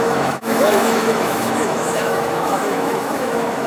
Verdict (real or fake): fake